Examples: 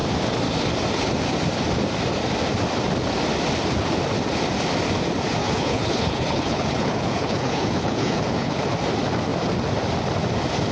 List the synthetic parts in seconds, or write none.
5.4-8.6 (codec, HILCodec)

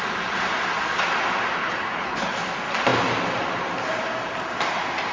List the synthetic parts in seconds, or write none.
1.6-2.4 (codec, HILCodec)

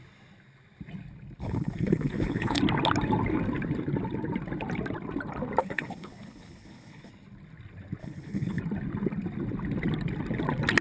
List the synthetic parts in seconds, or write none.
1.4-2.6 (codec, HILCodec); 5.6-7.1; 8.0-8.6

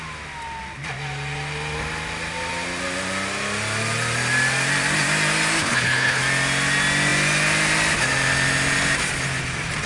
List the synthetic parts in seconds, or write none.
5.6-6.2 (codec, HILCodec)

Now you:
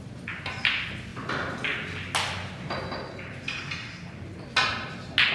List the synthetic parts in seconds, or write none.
none

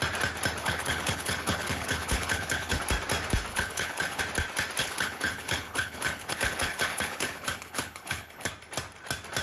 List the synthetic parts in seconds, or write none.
0.6-2.8 (codec, HILCodec); 3.5-4.2; 4.8-8.5